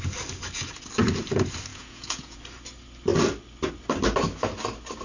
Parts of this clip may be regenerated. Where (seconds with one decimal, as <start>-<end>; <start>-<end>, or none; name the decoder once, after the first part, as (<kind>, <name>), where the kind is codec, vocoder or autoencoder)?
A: 1.7-2.4 (vocoder, Vocos)

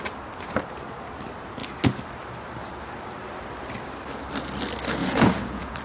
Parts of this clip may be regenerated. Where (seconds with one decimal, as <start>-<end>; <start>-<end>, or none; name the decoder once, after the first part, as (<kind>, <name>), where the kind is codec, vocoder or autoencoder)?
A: 5.0-5.8 (vocoder, Vocos)

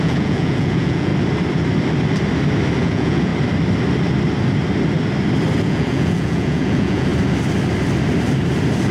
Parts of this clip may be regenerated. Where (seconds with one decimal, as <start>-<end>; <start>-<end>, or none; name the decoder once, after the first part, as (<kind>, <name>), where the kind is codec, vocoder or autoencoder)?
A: 0.0-1.1 (vocoder, Vocos); 2.8-3.3; 5.6-7.1

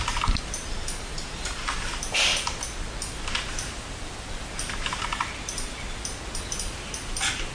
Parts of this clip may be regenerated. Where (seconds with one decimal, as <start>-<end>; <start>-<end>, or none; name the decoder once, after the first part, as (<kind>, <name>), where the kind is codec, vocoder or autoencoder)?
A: none

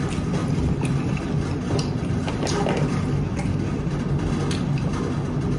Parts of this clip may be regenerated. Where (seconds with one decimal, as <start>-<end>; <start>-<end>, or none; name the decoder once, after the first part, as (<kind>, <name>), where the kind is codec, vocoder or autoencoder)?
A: none

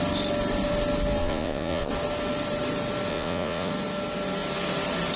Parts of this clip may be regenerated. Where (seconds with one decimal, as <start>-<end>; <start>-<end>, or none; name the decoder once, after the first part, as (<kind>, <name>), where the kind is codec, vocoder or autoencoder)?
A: 1.2-1.9 (vocoder, Vocos); 3.1-3.7

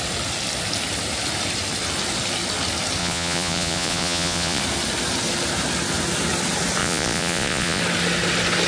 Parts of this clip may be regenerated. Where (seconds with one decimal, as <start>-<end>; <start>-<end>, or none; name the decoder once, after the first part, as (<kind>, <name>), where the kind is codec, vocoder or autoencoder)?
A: 3.0-4.6 (vocoder, Vocos); 6.8-7.8